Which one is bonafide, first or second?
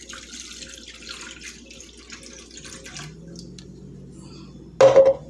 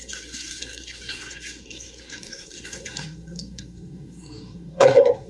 first